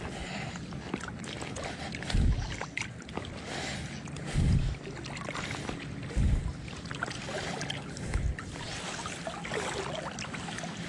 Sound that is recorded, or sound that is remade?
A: recorded